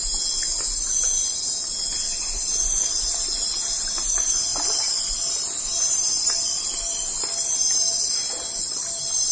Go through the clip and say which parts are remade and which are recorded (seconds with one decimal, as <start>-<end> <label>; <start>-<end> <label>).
0.0-9.3 recorded